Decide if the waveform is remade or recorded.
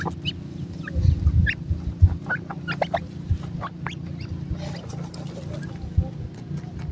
recorded